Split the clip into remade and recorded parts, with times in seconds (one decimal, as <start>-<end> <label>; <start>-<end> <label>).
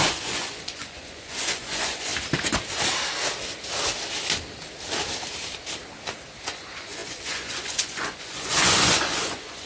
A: 0.0-2.1 remade; 2.1-6.4 recorded; 6.4-9.7 remade